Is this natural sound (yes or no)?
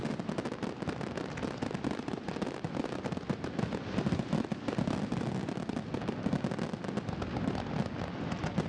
yes